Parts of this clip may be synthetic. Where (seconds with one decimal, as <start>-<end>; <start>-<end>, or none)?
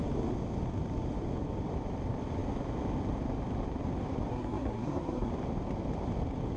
4.3-5.3